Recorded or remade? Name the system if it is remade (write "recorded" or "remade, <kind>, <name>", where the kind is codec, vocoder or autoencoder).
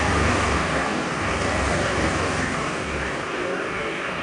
remade, codec, DAC